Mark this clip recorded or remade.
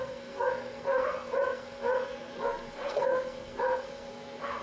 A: remade